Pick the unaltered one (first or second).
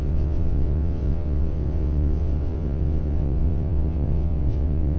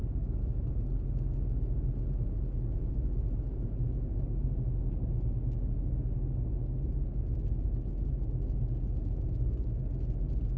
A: second